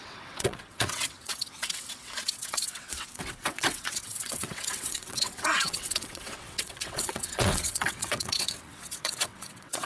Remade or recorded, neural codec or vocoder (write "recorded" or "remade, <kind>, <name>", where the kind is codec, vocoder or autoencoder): remade, vocoder, WaveNeXt